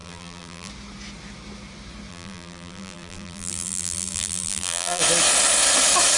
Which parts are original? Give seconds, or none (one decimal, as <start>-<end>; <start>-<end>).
0.7-2.1; 5.0-6.2